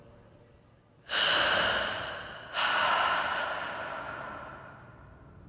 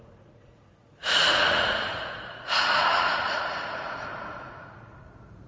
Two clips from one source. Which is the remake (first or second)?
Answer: second